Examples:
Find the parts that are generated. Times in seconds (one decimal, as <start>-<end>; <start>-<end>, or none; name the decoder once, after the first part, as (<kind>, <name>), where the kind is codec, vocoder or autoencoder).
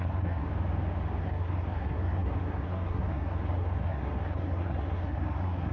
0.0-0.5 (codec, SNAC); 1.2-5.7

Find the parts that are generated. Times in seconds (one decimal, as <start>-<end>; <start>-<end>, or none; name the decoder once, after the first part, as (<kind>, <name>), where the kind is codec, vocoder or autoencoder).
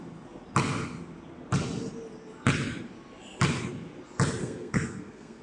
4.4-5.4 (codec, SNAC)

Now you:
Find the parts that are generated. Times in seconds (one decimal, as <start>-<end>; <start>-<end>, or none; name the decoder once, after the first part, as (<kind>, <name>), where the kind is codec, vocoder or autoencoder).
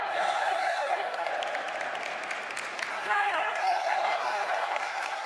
0.0-1.3 (codec, SNAC); 2.9-5.3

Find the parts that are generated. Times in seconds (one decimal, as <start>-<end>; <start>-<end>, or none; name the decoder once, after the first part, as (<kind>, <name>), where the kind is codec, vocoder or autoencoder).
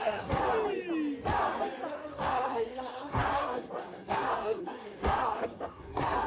0.0-0.4 (codec, SNAC); 1.9-6.3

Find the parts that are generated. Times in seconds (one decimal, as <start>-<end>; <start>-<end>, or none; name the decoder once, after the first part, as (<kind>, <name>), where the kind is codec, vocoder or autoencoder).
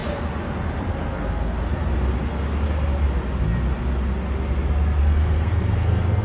0.9-1.7 (codec, SNAC); 5.0-6.2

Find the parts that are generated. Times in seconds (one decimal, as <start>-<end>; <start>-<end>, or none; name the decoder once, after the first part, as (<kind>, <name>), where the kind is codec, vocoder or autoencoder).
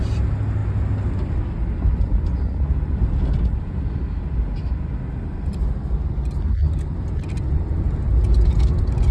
none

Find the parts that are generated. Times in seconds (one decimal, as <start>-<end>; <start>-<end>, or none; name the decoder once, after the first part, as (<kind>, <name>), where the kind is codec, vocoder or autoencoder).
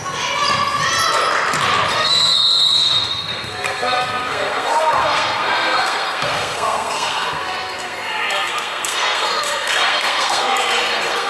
1.9-11.3 (codec, SNAC)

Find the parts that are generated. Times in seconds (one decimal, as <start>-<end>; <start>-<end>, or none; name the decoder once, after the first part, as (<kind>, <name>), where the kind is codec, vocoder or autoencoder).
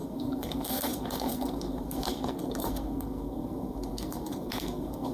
0.0-5.1 (codec, SNAC)